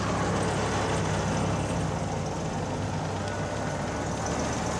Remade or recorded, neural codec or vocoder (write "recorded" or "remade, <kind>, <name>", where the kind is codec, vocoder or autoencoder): recorded